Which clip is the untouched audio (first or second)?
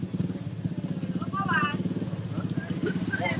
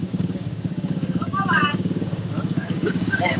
first